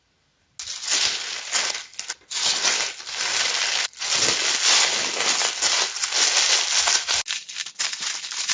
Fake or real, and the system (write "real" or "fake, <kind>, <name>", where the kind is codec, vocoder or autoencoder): real